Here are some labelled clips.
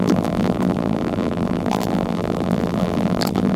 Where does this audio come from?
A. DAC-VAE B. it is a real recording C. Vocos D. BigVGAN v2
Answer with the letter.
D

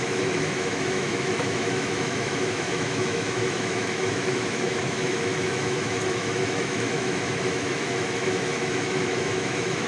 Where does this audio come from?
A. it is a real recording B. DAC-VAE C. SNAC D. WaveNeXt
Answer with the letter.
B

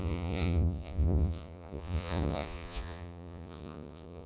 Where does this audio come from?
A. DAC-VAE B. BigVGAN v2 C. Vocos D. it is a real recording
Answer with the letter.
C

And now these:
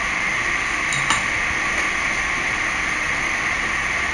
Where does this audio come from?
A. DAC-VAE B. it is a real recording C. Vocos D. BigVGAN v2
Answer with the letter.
B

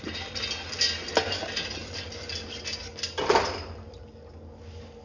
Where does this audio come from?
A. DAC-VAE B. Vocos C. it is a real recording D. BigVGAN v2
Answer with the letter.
C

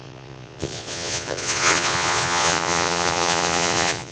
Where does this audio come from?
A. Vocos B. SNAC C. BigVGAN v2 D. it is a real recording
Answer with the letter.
A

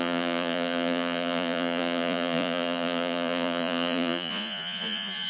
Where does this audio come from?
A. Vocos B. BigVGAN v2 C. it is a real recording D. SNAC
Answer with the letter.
A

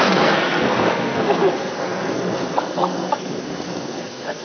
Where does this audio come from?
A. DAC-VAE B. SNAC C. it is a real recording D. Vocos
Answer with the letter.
B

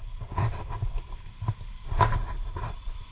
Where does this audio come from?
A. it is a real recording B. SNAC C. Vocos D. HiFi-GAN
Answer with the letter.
A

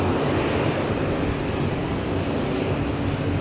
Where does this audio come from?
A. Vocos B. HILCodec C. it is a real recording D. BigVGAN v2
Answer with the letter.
C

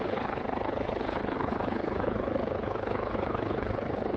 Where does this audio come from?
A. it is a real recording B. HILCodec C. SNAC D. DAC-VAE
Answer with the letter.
B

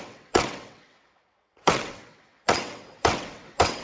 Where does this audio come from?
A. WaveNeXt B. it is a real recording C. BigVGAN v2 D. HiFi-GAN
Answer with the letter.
A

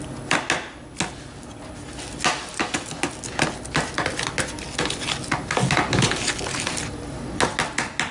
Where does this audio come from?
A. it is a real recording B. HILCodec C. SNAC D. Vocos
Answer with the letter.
A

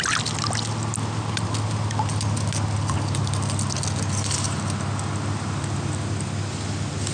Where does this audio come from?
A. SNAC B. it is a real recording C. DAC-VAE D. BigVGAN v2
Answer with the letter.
B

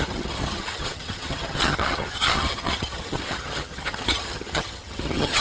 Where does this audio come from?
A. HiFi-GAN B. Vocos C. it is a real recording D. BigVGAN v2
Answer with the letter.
A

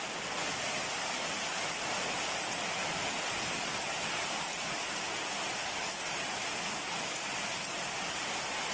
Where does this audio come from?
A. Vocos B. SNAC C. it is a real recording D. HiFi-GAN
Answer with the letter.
C